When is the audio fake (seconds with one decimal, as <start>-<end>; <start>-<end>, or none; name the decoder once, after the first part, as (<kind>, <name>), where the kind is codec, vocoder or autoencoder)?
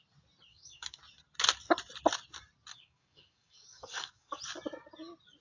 0.5-1.0 (codec, DAC); 2.7-4.4